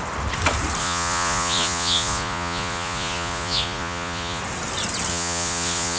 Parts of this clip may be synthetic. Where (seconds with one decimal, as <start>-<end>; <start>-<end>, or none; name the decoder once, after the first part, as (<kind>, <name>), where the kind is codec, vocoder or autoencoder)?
0.8-4.4 (vocoder, Vocos); 5.1-6.0